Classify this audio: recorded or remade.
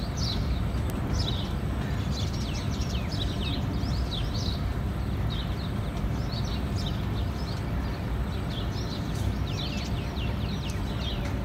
recorded